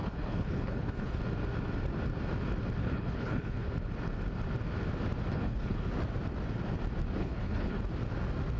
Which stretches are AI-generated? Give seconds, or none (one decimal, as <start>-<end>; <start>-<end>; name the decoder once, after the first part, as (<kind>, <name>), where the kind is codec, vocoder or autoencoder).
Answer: 0.0-1.2 (codec, HILCodec); 2.8-3.7; 5.3-5.9; 7.2-7.8